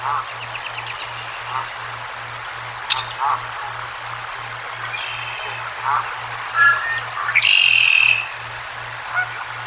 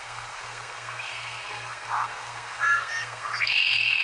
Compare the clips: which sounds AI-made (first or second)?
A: second